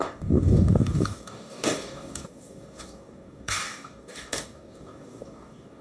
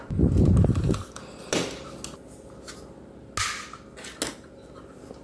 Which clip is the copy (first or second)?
first